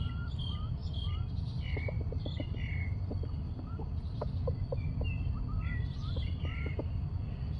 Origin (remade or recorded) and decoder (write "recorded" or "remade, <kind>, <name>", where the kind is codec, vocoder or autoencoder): recorded